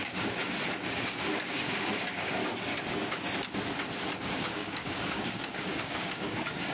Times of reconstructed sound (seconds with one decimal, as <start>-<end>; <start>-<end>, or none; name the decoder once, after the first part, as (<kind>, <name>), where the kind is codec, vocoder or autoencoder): 0.0-0.4 (codec, DAC); 0.9-2.4; 4.3-6.7